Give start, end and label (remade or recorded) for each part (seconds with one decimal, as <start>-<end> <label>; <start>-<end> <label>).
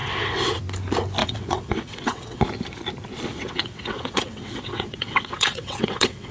0.0-0.6 remade; 0.6-1.2 recorded; 1.2-2.4 remade; 2.4-3.3 recorded; 3.3-6.3 remade